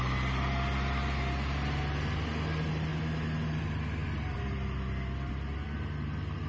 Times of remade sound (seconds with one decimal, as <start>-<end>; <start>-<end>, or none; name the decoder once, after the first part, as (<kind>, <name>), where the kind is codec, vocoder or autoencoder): 0.0-2.9 (vocoder, BigVGAN v2); 3.6-6.5